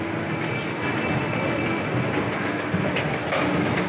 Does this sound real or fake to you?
real